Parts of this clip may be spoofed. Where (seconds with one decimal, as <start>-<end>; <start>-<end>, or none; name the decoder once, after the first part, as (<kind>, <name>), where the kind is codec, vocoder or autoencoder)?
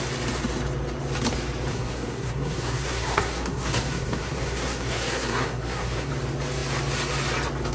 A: 1.7-6.1 (codec, SNAC)